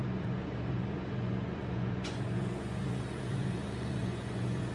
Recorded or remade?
remade